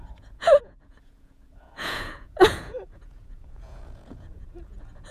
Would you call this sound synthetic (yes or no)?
yes